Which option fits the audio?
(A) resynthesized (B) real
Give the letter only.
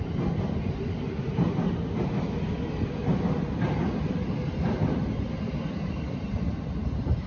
B